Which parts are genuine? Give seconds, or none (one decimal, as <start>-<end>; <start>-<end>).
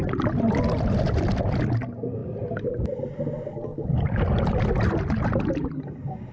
0.0-6.3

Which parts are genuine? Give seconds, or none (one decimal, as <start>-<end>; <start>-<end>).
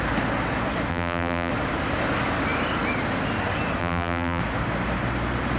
0.0-0.9; 1.5-3.8; 4.4-5.6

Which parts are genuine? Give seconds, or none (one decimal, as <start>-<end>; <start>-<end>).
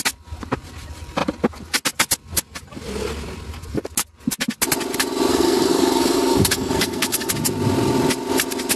0.0-5.3; 7.3-8.8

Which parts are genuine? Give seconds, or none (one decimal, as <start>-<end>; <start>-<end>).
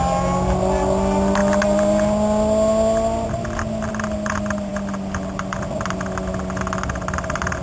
0.0-7.6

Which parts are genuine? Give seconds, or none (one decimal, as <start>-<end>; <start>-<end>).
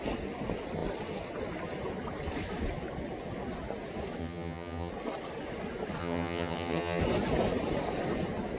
0.0-4.2; 4.9-6.0; 7.0-8.6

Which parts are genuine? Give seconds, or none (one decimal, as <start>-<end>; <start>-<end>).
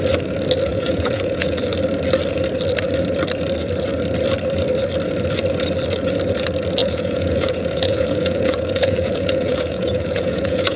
0.0-0.7; 1.7-6.8